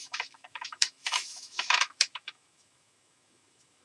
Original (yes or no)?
no